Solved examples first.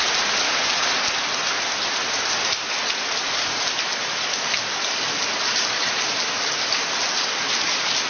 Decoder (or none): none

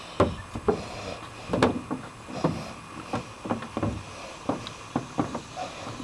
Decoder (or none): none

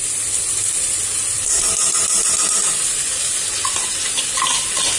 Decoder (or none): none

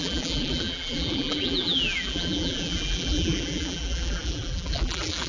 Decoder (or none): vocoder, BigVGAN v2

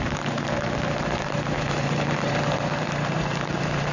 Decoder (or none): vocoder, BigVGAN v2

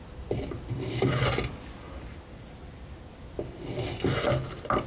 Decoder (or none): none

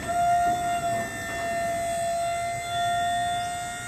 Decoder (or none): none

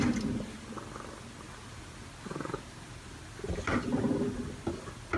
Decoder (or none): none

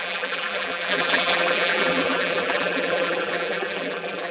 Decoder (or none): vocoder, BigVGAN v2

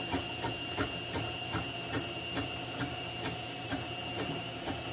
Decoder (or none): vocoder, BigVGAN v2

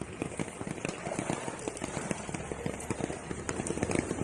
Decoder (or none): vocoder, BigVGAN v2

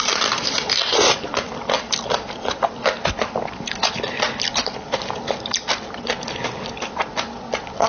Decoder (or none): vocoder, BigVGAN v2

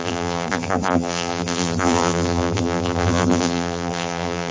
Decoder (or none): vocoder, BigVGAN v2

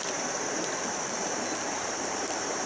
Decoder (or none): vocoder, BigVGAN v2